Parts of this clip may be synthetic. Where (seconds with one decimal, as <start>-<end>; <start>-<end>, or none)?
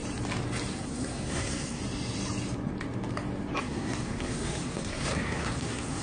0.7-1.8; 3.6-6.0